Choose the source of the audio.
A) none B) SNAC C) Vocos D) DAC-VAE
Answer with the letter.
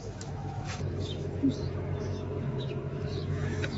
D